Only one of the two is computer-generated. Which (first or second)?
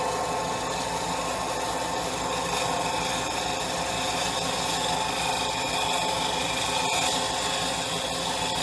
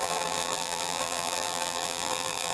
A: second